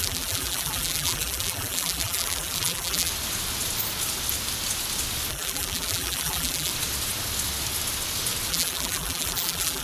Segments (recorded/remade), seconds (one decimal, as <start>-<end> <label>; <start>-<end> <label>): 0.0-3.1 remade; 3.1-5.3 recorded; 5.3-6.7 remade; 6.7-8.5 recorded; 8.5-9.8 remade